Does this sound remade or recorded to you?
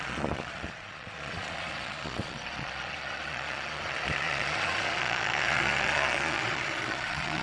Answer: remade